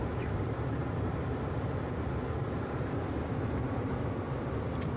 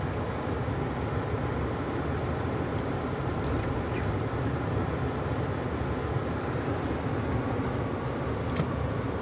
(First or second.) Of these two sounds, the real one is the second